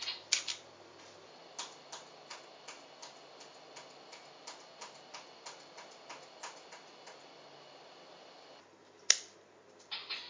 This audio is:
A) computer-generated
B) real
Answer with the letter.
B